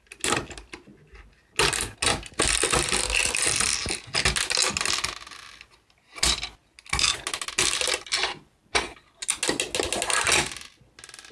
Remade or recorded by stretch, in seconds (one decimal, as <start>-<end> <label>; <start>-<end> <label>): 0.0-11.3 recorded